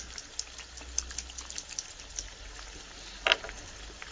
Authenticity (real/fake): real